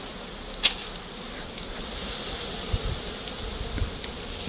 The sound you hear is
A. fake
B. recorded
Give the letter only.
B